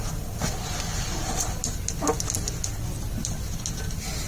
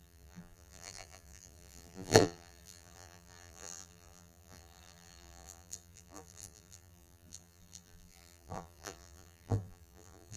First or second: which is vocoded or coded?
second